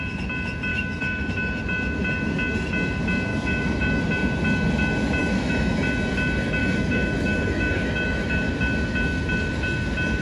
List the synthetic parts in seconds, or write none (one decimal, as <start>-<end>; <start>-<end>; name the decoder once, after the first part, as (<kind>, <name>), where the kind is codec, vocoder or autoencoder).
0.7-1.6 (autoencoder, DAC-VAE); 3.3-4.0; 5.2-5.8; 6.6-8.5